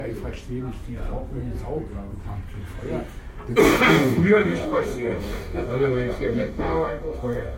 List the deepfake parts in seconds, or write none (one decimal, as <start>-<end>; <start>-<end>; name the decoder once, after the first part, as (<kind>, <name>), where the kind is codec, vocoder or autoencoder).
3.6-7.6 (codec, DAC)